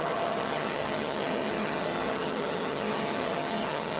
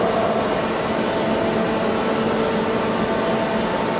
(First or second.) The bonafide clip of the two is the second